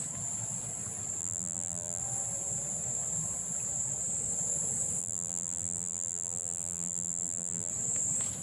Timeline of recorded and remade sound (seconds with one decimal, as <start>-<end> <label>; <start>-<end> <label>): 0.0-1.2 recorded; 1.2-2.0 remade; 2.0-5.0 recorded; 5.0-7.7 remade; 7.7-8.4 recorded